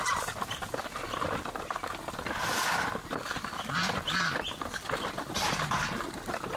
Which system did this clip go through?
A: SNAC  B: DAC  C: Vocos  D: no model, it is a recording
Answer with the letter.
D